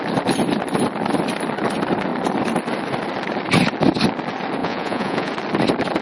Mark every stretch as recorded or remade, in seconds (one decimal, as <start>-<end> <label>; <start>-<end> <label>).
0.0-4.6 recorded; 4.6-5.3 remade; 5.3-6.0 recorded